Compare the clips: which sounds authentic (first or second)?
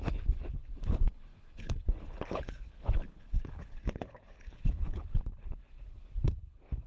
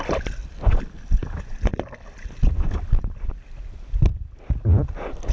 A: second